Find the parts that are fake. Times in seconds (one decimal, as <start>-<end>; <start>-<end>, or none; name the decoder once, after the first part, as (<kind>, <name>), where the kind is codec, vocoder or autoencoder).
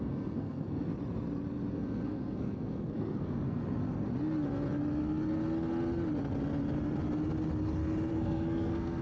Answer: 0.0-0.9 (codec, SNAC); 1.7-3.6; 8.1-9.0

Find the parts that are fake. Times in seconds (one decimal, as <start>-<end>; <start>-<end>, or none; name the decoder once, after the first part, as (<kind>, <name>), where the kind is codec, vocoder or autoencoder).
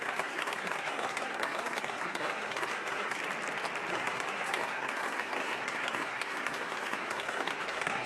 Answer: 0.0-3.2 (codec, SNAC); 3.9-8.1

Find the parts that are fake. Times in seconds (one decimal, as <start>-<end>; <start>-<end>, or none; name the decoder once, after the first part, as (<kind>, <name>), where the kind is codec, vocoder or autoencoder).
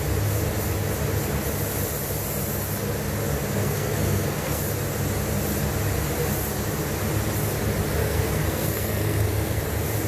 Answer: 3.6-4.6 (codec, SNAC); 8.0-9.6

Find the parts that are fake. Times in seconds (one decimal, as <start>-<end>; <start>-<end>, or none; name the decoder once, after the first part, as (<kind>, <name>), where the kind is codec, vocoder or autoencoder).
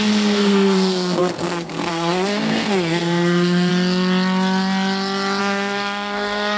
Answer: 0.0-3.7 (codec, SNAC); 5.4-6.6